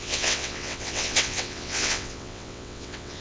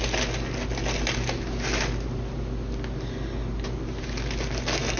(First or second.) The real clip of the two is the second